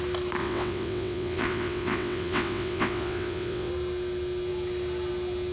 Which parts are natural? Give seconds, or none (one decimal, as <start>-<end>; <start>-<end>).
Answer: 0.0-0.4; 3.7-5.5

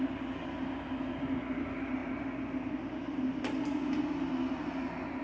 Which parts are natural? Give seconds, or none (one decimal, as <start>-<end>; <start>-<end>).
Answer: 0.0-5.2

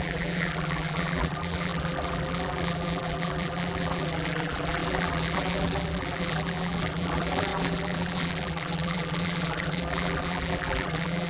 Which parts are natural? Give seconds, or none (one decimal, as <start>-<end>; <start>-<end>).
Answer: none

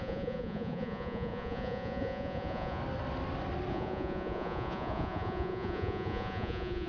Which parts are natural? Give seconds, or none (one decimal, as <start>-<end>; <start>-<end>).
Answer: 2.8-3.7